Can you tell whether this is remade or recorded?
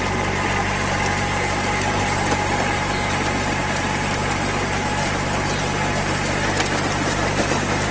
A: remade